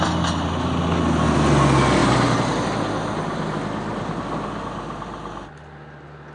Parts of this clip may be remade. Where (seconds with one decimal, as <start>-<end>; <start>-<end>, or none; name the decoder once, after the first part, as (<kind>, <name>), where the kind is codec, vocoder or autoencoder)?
none